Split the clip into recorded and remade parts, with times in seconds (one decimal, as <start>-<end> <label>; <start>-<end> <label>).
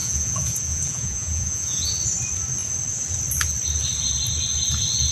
0.0-1.9 remade; 1.9-5.1 recorded